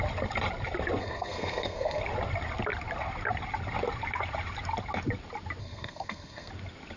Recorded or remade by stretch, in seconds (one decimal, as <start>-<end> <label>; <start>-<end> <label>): 0.0-1.0 recorded; 1.0-2.0 remade; 2.0-5.6 recorded; 5.6-6.5 remade; 6.5-7.0 recorded